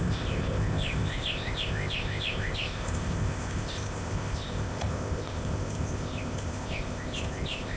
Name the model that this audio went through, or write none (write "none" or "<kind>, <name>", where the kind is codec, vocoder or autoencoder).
codec, ZipCodec